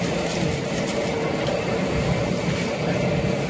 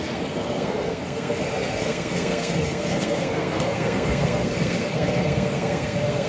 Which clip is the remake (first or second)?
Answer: second